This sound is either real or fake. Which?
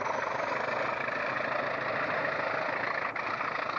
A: real